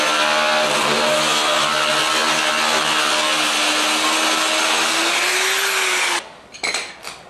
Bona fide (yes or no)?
yes